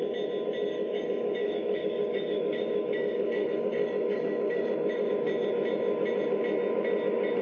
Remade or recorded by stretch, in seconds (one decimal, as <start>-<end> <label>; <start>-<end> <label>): 0.0-0.7 recorded; 0.7-5.1 remade; 5.1-7.4 recorded